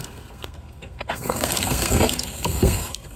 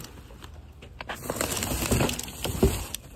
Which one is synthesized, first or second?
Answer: first